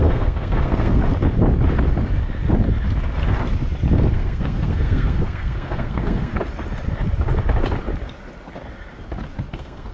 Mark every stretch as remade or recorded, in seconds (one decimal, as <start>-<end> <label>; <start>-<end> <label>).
0.0-1.0 remade; 1.0-4.1 recorded; 4.1-6.3 remade; 6.3-9.5 recorded; 9.5-9.9 remade